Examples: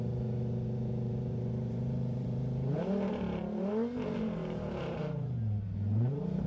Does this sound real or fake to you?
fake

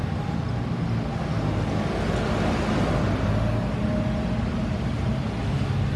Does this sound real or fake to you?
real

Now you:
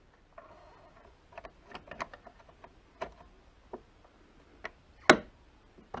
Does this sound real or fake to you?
real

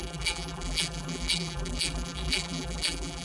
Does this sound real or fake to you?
fake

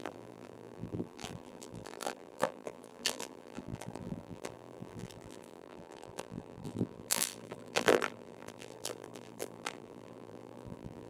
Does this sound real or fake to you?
fake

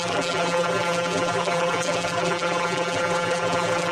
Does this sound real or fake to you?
fake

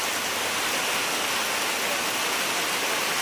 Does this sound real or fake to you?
real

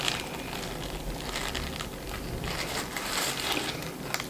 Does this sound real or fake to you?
real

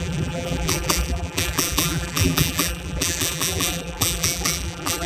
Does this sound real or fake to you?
fake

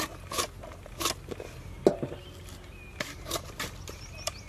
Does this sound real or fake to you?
real